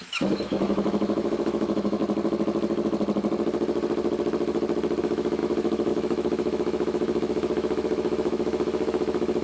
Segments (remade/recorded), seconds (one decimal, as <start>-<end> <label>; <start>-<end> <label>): 0.0-2.0 remade; 2.0-5.0 recorded; 5.0-9.4 remade

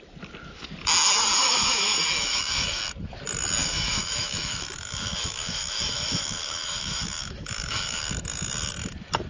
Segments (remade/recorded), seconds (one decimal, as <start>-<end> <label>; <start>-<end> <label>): 0.0-1.4 recorded; 1.4-2.8 remade; 2.8-3.6 recorded; 3.6-8.0 remade; 8.0-9.3 recorded

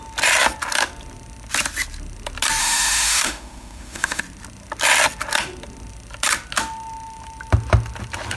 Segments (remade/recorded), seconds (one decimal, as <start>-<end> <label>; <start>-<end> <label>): 0.0-2.6 recorded; 2.6-4.2 remade; 4.2-8.4 recorded

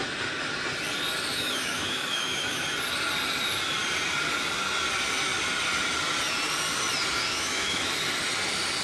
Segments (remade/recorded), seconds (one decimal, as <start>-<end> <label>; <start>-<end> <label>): 0.0-1.3 recorded; 1.3-2.6 remade; 2.6-7.3 recorded; 7.3-7.9 remade; 7.9-8.8 recorded